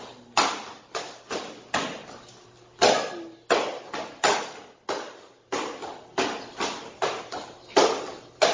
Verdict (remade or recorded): recorded